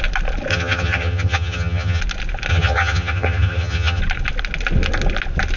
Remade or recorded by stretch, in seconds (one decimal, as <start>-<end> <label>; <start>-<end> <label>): 0.0-0.5 recorded; 0.5-2.0 remade; 2.0-2.5 recorded; 2.5-4.0 remade; 4.0-5.6 recorded